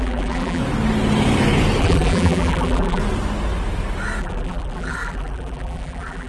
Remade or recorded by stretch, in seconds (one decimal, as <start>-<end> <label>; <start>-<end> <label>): 0.0-0.6 remade; 0.6-1.8 recorded; 1.8-3.0 remade; 3.0-4.2 recorded; 4.2-6.3 remade